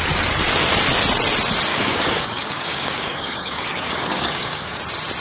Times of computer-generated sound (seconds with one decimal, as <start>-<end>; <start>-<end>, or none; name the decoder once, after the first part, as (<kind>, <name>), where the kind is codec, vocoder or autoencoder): 1.7-4.8 (codec, DAC)